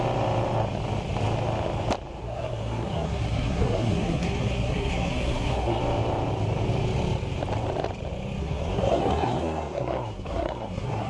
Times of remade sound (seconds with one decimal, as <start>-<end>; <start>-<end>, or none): 2.2-5.8; 8.4-11.1